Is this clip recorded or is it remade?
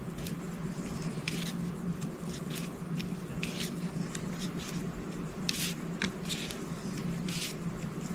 remade